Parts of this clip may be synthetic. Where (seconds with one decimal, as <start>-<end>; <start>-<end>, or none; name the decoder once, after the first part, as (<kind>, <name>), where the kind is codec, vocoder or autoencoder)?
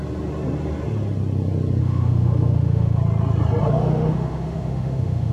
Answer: 1.8-3.0 (autoencoder, DAC-VAE); 3.7-5.3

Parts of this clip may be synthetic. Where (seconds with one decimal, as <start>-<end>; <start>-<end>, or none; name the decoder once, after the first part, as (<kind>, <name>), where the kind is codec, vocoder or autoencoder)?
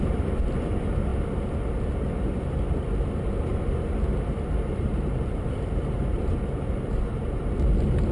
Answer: 0.0-1.1 (vocoder, BigVGAN v2); 4.8-8.1